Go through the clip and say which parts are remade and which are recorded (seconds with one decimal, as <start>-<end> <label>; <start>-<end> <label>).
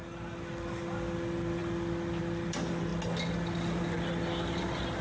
0.0-5.0 recorded